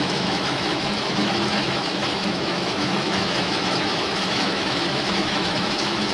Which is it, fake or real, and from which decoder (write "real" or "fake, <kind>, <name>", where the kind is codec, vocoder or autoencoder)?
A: fake, autoencoder, DAC-VAE